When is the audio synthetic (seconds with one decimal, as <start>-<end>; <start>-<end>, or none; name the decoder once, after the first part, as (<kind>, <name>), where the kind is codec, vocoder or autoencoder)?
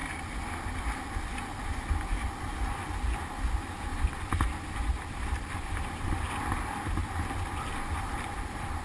3.9-6.2 (vocoder, BigVGAN v2); 7.0-8.8